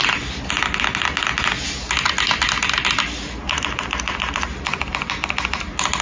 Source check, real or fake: real